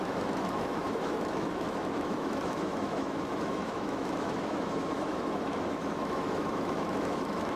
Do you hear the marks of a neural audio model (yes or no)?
yes